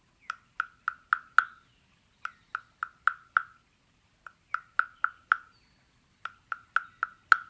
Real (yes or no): yes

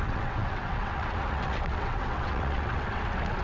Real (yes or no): no